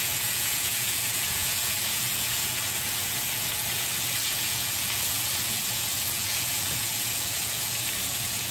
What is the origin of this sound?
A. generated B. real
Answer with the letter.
A